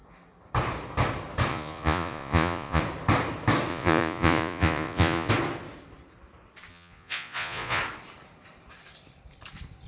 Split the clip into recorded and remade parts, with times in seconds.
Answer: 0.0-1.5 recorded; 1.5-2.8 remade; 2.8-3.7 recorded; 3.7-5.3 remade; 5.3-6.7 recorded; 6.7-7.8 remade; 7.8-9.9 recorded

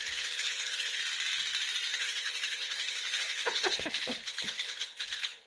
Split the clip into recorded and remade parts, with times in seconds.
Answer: 0.0-1.0 remade; 1.0-1.9 recorded; 1.9-5.5 remade

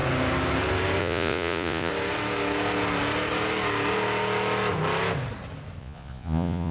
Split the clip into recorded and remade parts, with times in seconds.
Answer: 0.0-1.0 recorded; 1.0-1.9 remade; 1.9-5.8 recorded; 5.8-6.7 remade

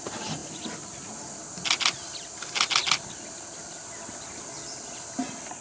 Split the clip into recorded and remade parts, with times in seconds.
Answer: 0.0-5.6 recorded

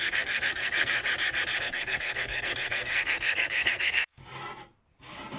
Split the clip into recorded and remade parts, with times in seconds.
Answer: 0.0-1.0 remade; 1.0-1.6 recorded; 1.6-4.2 remade; 4.2-5.4 recorded

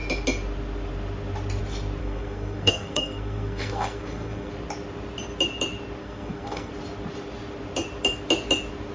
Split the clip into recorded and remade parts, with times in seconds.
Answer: 0.0-2.0 recorded; 2.0-4.5 remade; 4.5-6.0 recorded; 6.0-6.7 remade; 6.7-8.9 recorded

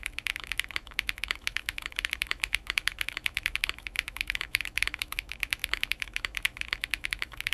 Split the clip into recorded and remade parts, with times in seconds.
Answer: 0.0-7.5 remade

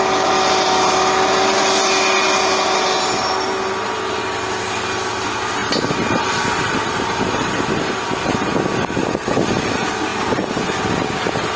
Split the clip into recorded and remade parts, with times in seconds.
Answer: 0.0-11.6 recorded